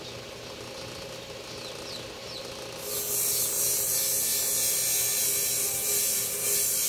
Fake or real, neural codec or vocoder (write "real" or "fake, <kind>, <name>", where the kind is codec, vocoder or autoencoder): real